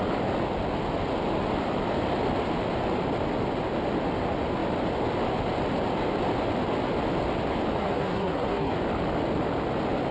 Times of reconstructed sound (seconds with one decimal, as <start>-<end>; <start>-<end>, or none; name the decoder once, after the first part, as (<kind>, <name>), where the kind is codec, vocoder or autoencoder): 7.8-8.7 (codec, SNAC)